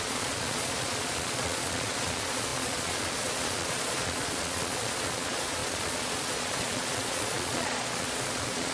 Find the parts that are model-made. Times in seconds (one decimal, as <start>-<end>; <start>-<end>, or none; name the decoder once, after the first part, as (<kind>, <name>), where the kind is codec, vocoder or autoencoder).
0.0-8.7 (vocoder, Vocos)